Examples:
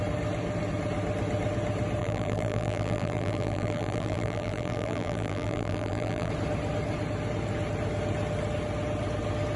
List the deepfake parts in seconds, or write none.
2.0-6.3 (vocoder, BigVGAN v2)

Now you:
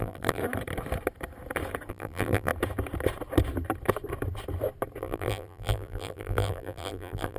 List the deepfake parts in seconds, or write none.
0.0-0.4 (vocoder, BigVGAN v2); 1.9-2.5; 5.0-7.4

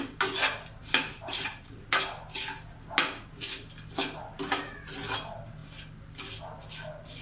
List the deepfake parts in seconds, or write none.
1.1-1.8 (vocoder, BigVGAN v2)

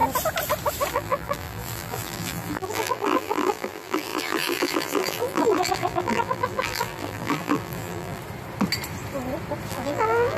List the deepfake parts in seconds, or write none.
0.9-8.2 (vocoder, BigVGAN v2); 9.7-10.4

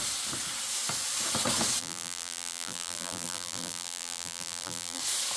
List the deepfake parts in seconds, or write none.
1.8-5.0 (vocoder, BigVGAN v2)